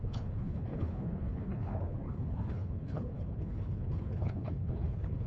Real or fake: fake